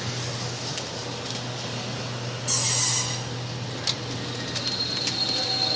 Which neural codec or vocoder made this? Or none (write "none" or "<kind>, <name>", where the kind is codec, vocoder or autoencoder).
none